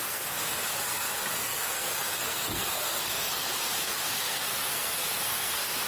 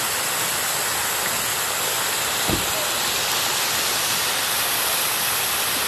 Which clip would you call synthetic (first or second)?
first